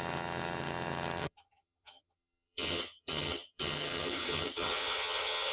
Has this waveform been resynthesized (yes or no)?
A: yes